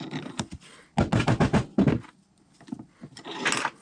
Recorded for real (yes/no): yes